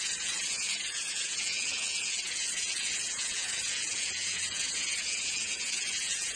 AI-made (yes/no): yes